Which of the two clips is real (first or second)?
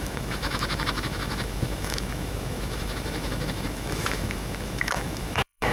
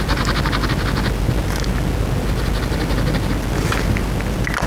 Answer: second